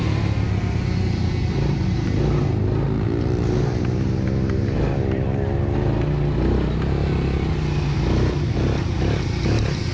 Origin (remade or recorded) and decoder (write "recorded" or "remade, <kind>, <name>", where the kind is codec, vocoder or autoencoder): recorded